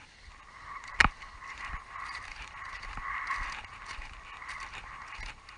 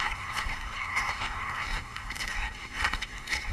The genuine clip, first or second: first